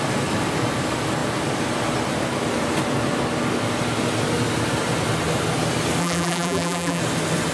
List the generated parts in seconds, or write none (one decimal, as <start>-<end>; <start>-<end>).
6.0-7.0